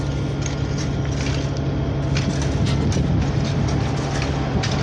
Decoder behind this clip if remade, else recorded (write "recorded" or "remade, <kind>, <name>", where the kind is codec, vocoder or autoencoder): recorded